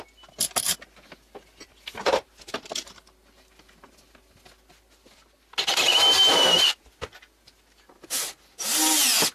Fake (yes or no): no